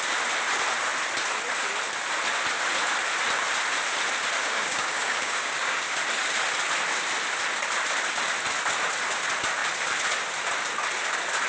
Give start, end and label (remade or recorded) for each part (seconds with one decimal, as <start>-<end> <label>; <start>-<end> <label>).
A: 0.0-4.4 recorded; 4.4-6.0 remade; 6.0-11.5 recorded

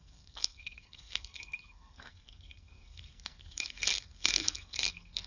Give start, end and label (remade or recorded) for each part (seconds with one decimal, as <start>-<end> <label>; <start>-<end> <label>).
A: 0.0-5.3 remade

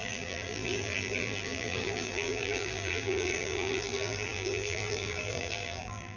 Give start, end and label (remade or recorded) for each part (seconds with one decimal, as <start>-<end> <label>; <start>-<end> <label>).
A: 0.0-6.2 remade

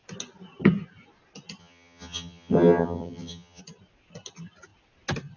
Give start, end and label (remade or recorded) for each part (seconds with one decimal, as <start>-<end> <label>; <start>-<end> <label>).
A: 0.0-1.6 recorded; 1.6-3.6 remade; 3.6-5.4 recorded

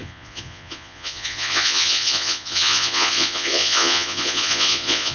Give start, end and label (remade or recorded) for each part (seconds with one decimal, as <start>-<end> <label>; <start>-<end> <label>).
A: 0.0-5.1 remade

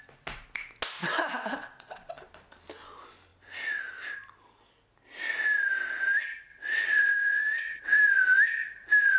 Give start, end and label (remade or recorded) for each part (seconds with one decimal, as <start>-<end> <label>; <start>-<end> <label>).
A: 0.0-1.0 recorded; 1.0-2.1 remade; 2.1-6.5 recorded; 6.5-8.0 remade; 8.0-9.2 recorded

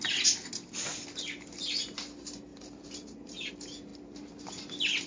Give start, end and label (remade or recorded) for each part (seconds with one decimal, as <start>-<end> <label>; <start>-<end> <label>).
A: 0.0-2.5 recorded; 2.5-3.5 remade; 3.5-5.1 recorded